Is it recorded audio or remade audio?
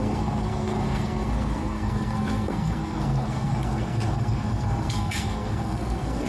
remade